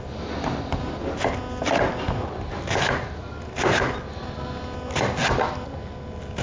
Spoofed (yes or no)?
no